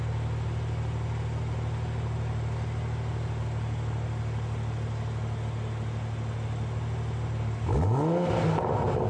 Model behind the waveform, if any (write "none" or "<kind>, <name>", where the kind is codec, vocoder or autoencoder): none